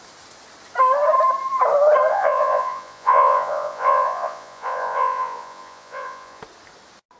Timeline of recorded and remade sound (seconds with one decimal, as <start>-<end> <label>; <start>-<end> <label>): 0.0-2.1 recorded; 2.1-6.4 remade; 6.4-7.2 recorded